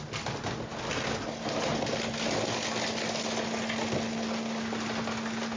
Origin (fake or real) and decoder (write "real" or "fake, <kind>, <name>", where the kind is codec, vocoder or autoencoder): real